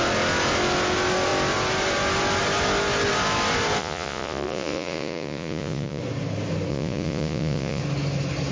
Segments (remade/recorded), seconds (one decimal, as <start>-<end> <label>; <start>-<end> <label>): 0.0-3.8 recorded; 3.8-6.0 remade; 6.0-6.7 recorded; 6.7-7.8 remade; 7.8-8.5 recorded